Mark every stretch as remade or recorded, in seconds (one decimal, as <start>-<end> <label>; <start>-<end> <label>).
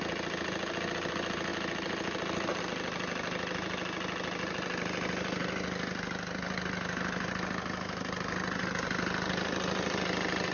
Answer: 0.0-10.5 recorded